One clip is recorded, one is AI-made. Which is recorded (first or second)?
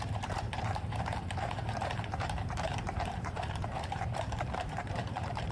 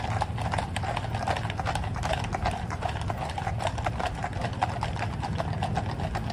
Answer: second